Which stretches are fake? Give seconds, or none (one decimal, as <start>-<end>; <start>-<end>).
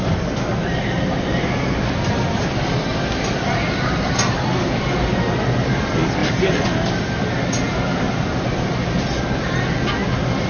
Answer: none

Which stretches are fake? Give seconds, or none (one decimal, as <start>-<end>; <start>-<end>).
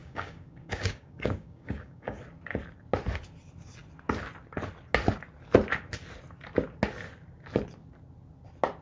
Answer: 0.0-2.2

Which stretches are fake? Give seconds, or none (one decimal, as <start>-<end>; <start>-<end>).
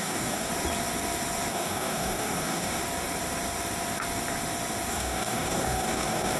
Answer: 0.0-0.5; 1.5-2.8; 4.9-6.4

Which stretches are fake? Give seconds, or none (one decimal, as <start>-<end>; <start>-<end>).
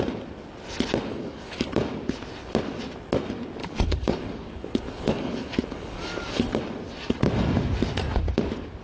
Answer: 1.1-1.7; 3.6-6.6